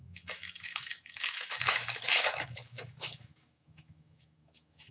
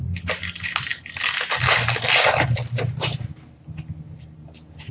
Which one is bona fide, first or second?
second